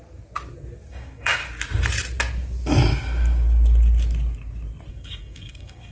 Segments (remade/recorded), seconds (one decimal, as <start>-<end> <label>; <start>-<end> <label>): 0.0-0.9 recorded; 0.9-1.4 remade; 1.4-4.9 recorded; 4.9-5.9 remade